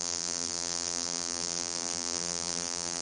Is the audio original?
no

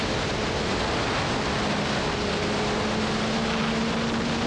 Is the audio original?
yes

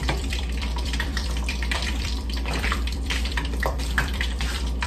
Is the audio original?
no